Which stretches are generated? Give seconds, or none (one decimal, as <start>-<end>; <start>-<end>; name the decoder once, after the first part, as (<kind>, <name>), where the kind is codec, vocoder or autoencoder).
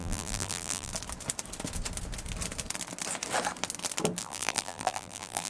0.0-0.9 (vocoder, BigVGAN v2); 4.2-5.5